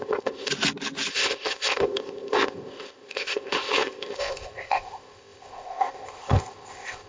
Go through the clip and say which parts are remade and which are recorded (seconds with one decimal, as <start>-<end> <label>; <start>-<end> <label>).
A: 0.0-0.5 remade; 0.5-1.1 recorded; 1.1-7.1 remade